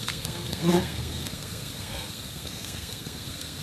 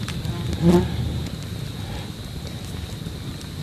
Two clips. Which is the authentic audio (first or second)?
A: second